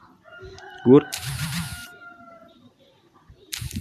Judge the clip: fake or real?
fake